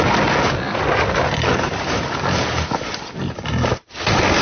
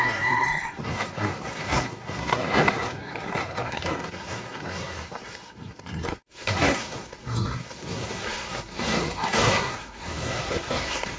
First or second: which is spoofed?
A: second